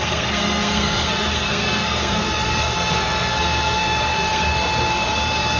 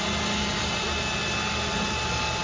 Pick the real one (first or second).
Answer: second